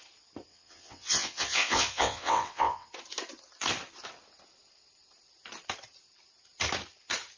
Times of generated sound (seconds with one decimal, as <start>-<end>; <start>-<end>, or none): 0.5-2.9